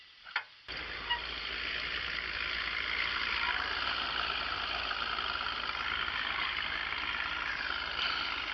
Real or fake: real